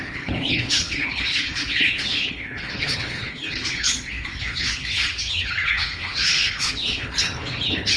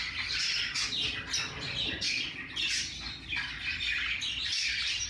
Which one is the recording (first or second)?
second